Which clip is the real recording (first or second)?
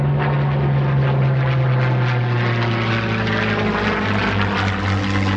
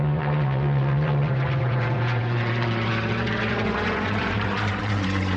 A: first